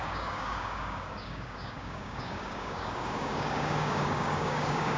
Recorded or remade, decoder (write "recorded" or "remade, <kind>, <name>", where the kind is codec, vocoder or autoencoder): remade, codec, DAC